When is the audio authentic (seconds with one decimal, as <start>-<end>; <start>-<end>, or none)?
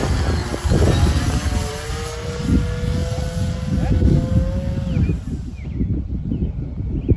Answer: 0.0-7.2